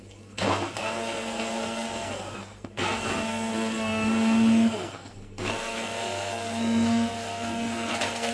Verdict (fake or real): fake